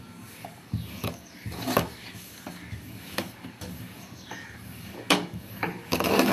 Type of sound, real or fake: fake